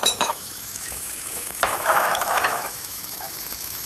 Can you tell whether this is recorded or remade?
remade